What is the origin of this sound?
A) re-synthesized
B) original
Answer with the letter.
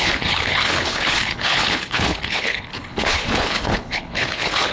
A